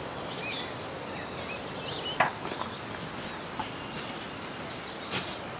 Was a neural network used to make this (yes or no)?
no